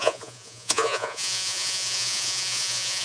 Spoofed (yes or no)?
yes